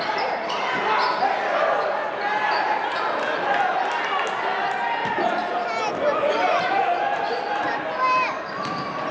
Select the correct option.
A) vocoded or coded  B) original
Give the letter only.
B